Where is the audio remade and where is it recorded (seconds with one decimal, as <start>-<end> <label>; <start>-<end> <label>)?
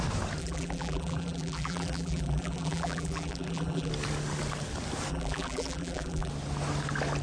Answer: 0.0-0.4 recorded; 0.4-3.9 remade; 3.9-5.1 recorded; 5.1-6.3 remade; 6.3-7.2 recorded